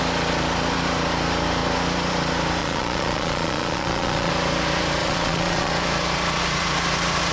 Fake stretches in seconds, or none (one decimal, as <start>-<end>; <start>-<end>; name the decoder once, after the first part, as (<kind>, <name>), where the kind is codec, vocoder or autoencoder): 2.6-4.3 (vocoder, Vocos); 5.0-5.7

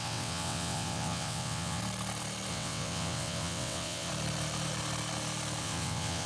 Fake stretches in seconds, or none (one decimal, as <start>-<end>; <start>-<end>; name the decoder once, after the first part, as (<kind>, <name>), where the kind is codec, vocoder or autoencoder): 0.0-1.8 (vocoder, WaveNeXt); 2.5-4.1; 5.6-6.3